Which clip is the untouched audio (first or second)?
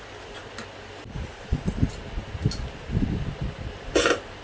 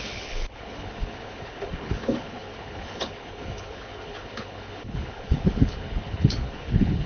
first